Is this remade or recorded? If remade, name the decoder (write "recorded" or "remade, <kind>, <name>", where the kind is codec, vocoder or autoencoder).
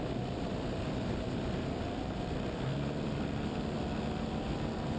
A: recorded